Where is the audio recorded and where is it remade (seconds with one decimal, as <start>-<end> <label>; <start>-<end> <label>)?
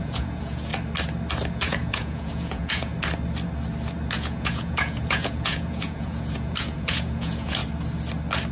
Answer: 0.0-0.7 remade; 0.7-1.5 recorded; 1.5-2.9 remade; 2.9-4.1 recorded; 4.1-7.6 remade; 7.6-8.5 recorded